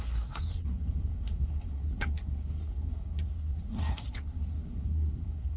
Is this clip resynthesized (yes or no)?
yes